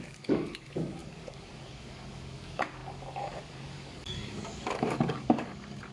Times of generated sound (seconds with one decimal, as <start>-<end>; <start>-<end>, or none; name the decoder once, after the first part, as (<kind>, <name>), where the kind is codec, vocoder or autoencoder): 0.0-5.9 (codec, DAC)